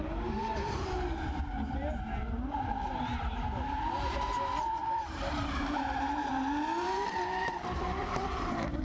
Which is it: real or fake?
fake